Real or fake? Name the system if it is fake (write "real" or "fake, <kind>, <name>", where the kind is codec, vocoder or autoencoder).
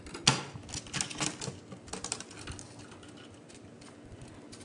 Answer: real